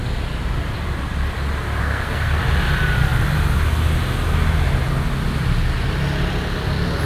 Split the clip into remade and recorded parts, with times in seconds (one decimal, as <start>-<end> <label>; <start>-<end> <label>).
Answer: 0.0-1.8 recorded; 1.8-2.4 remade; 2.4-7.1 recorded